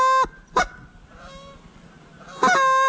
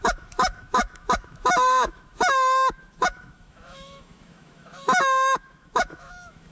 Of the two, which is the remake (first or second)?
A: second